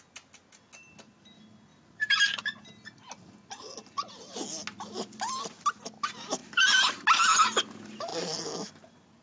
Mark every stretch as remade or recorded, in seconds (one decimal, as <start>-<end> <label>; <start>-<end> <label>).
0.0-1.7 recorded; 1.7-2.4 remade; 2.4-6.4 recorded; 6.4-6.9 remade; 6.9-9.2 recorded